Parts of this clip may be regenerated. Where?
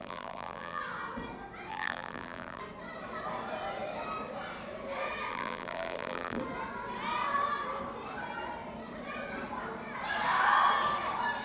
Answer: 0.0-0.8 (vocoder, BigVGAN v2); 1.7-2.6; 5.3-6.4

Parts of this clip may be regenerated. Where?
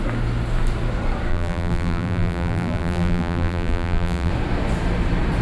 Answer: 1.3-4.3 (vocoder, BigVGAN v2)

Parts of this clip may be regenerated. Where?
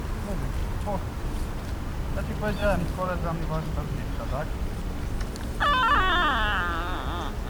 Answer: 0.6-1.3 (vocoder, BigVGAN v2); 2.6-3.2; 4.4-5.5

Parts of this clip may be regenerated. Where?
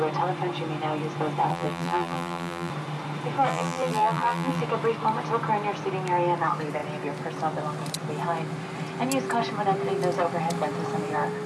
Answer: 1.5-2.7 (vocoder, BigVGAN v2); 3.5-4.6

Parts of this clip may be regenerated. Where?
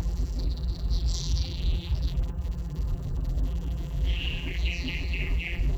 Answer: 0.0-5.8 (vocoder, BigVGAN v2)